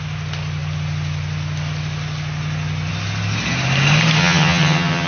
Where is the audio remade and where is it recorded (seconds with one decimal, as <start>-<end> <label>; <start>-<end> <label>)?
0.0-4.2 recorded; 4.2-5.1 remade